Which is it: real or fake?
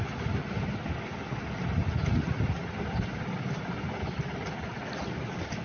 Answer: real